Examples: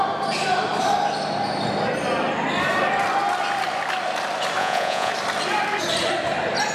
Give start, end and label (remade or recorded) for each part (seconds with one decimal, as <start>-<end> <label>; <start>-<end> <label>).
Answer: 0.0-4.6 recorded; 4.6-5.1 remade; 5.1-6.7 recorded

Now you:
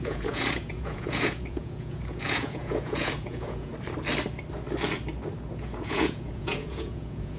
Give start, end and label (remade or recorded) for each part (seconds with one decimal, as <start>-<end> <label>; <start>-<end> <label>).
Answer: 0.0-3.7 remade; 3.7-5.5 recorded; 5.5-7.4 remade

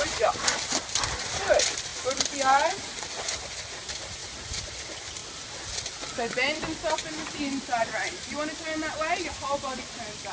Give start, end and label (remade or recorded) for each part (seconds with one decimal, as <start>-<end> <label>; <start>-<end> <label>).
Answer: 0.0-4.2 recorded; 4.2-4.8 remade; 4.8-10.3 recorded

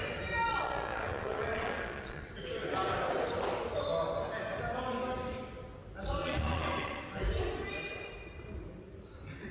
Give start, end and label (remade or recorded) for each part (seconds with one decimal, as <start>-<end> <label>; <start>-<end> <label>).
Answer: 0.0-0.5 recorded; 0.5-2.3 remade; 2.3-6.2 recorded; 6.2-7.0 remade; 7.0-9.5 recorded

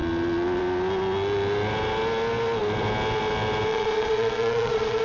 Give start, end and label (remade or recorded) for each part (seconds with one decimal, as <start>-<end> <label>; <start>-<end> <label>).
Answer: 0.0-3.7 recorded; 3.7-5.0 remade

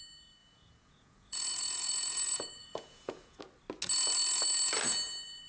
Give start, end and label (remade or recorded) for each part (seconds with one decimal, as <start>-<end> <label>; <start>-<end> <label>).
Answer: 0.0-0.4 recorded; 0.4-3.4 remade; 3.4-5.5 recorded